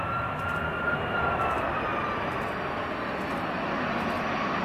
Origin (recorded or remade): recorded